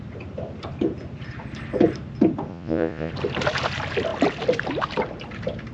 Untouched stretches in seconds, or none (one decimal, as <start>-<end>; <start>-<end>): 0.0-2.5; 3.1-5.7